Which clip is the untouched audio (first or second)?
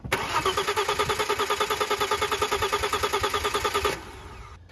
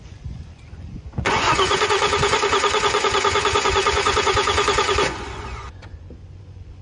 first